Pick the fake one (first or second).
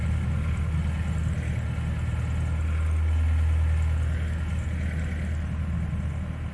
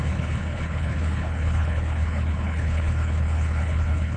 second